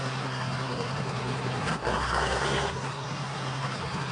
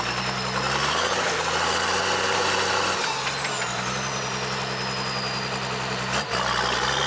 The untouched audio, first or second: second